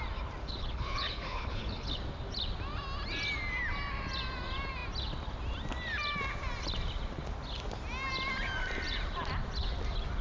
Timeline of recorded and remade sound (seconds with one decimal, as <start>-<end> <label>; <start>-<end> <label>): 0.0-0.4 recorded; 0.4-2.0 remade; 2.0-10.2 recorded